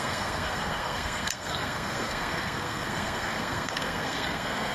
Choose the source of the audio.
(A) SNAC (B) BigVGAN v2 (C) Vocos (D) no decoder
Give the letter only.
A